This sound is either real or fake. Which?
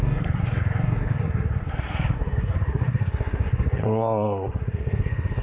fake